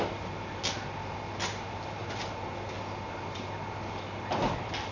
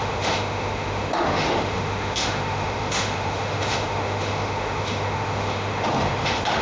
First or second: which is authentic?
first